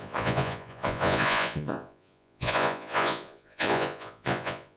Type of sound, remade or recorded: remade